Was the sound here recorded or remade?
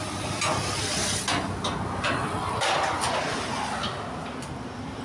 recorded